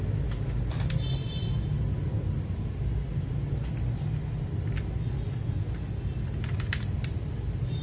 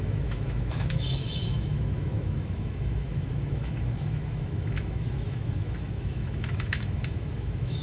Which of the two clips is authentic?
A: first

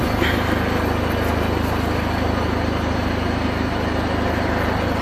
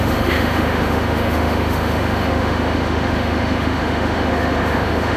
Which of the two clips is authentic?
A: first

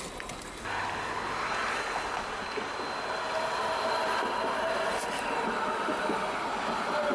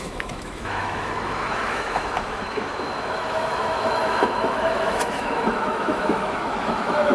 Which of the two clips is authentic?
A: first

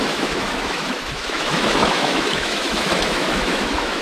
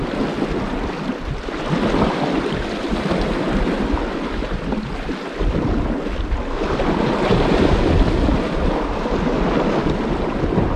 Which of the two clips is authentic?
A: second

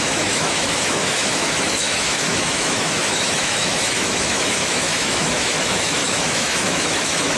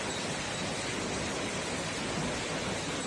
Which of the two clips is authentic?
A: second